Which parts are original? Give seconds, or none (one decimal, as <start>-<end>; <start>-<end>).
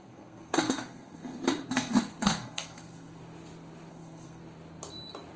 1.2-1.7; 3.2-3.9; 4.4-5.4